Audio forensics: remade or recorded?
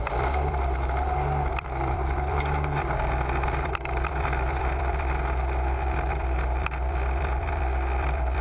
remade